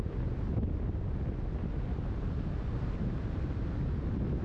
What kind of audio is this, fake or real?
real